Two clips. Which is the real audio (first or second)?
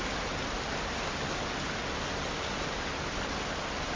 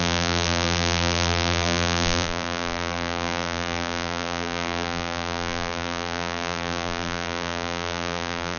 first